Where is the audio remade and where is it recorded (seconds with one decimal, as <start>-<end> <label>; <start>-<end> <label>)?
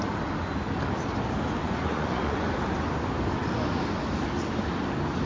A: 0.0-1.6 recorded; 1.6-2.5 remade; 2.5-5.3 recorded